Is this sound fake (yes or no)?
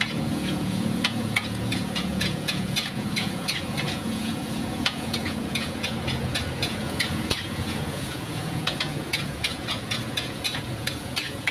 yes